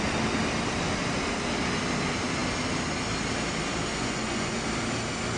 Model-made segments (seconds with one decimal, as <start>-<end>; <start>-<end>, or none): 3.9-4.6